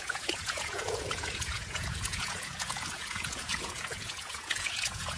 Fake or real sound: fake